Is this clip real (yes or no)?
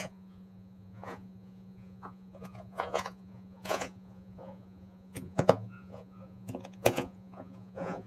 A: no